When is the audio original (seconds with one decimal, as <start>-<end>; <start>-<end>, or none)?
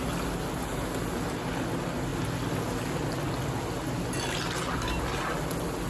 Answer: 0.0-5.9